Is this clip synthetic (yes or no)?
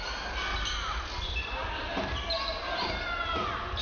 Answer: no